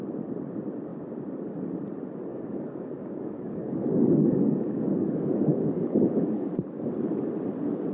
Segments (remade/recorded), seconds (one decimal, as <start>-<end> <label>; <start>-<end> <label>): 0.0-2.3 recorded; 2.3-6.5 remade; 6.5-7.9 recorded

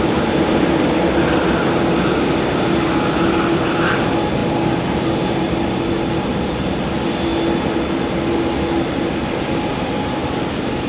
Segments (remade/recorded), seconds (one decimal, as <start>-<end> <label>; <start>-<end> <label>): 0.0-10.9 recorded